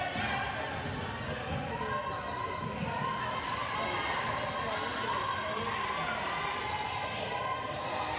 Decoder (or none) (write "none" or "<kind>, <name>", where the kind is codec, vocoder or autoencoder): none